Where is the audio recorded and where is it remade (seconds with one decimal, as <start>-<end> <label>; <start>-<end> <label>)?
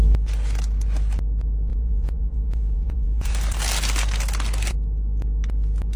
0.0-1.7 recorded; 1.7-3.3 remade; 3.3-6.0 recorded